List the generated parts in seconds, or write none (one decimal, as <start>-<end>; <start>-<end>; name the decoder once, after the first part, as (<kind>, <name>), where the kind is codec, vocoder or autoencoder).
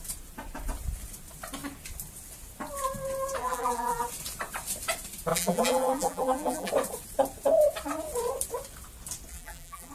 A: 3.4-4.0 (vocoder, BigVGAN v2); 5.3-6.7; 9.3-9.9